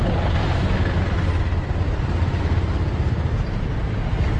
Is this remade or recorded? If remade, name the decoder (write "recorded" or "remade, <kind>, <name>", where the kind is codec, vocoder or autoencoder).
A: recorded